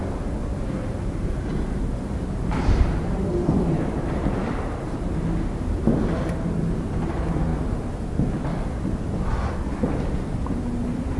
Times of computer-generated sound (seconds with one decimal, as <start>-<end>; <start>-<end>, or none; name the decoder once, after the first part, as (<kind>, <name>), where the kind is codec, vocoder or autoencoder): 0.4-4.0 (vocoder, BigVGAN v2)